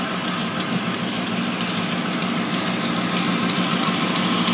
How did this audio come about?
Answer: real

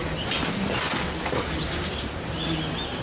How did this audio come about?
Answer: real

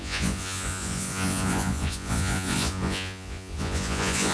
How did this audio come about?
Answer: fake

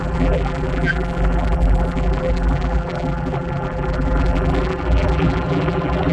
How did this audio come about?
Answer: fake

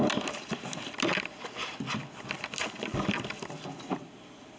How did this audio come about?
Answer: real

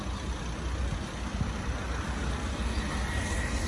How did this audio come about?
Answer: real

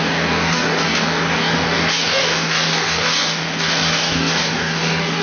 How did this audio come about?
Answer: fake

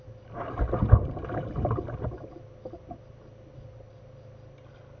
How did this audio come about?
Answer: real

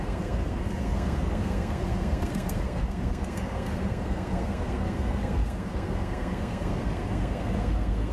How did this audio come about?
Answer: fake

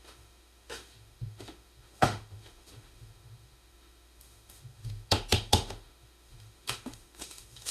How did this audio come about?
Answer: fake